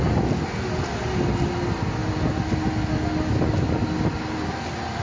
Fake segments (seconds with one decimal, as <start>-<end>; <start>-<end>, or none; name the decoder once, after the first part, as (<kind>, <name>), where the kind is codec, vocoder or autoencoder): none